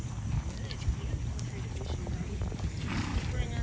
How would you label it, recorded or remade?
recorded